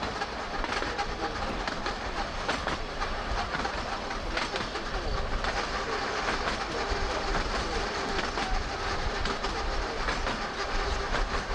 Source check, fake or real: real